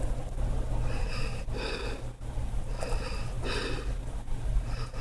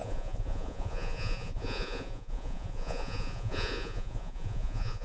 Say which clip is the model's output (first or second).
second